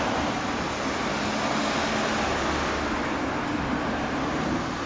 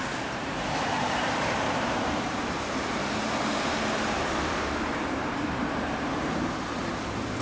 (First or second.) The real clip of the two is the first